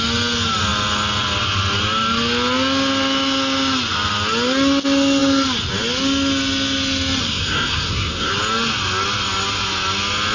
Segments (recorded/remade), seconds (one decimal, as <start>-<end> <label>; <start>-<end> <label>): 0.0-7.2 recorded; 7.2-8.3 remade; 8.3-10.3 recorded